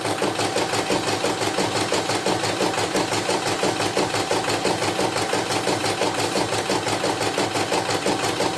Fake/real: real